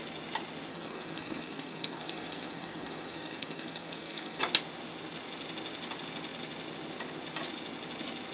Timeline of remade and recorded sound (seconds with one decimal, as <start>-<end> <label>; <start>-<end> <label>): 0.0-0.7 recorded; 0.7-4.4 remade; 4.4-8.3 recorded